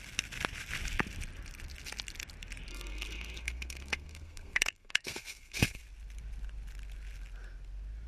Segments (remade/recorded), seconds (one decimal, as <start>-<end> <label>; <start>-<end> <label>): 0.0-2.7 recorded; 2.7-5.8 remade; 5.8-8.1 recorded

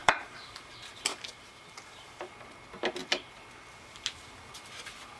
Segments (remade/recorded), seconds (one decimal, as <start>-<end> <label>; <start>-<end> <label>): 0.0-0.7 remade; 0.7-1.1 recorded; 1.1-2.2 remade; 2.2-5.2 recorded

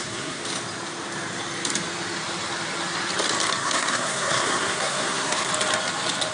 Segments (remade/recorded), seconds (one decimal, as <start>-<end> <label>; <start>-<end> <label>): 0.0-0.4 remade; 0.4-3.6 recorded; 3.6-5.5 remade; 5.5-6.3 recorded

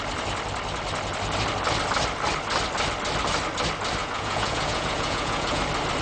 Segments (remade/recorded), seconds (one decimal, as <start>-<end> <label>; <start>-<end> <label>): 0.0-4.0 recorded; 4.0-5.6 remade; 5.6-6.0 recorded

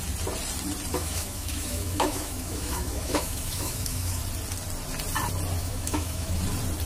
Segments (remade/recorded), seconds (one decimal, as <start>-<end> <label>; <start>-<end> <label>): 0.0-0.9 recorded; 0.9-4.2 remade; 4.2-5.6 recorded; 5.6-6.4 remade; 6.4-6.9 recorded